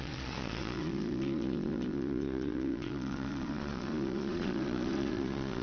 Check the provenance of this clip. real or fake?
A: fake